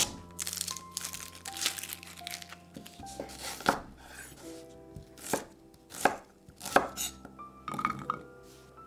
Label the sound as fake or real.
real